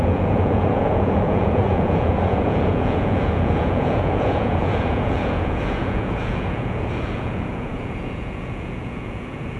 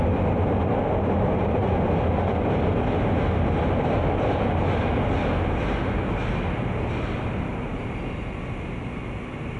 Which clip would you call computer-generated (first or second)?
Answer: first